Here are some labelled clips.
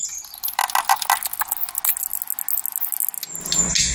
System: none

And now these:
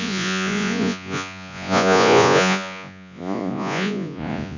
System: vocoder, Vocos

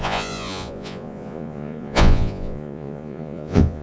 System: vocoder, Vocos